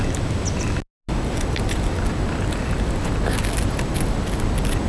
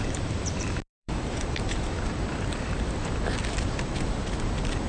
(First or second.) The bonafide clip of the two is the first